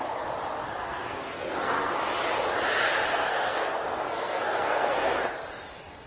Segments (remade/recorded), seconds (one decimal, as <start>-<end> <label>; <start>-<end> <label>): 0.0-0.8 recorded; 0.8-2.0 remade; 2.0-3.1 recorded; 3.1-5.3 remade; 5.3-6.1 recorded